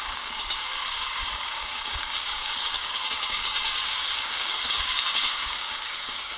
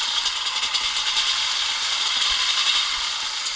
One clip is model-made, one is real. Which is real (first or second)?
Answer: second